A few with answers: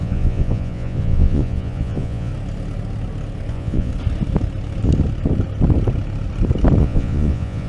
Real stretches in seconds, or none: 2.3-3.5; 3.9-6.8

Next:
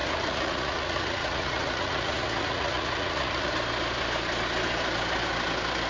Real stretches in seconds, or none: 3.5-5.9

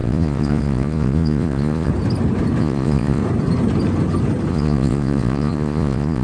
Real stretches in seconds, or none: 1.9-2.6; 3.2-4.5

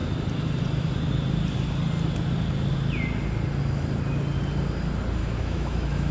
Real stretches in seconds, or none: 0.0-5.2

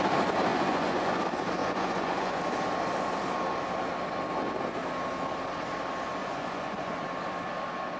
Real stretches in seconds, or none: 0.0-0.5; 1.2-1.6; 2.4-6.2; 7.0-8.0